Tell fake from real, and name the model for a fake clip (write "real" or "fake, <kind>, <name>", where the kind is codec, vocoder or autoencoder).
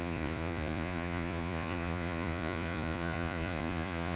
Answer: fake, vocoder, Vocos